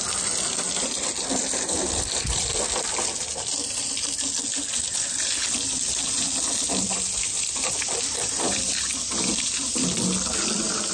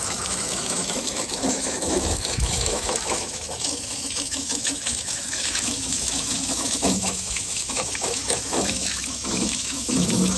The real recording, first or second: first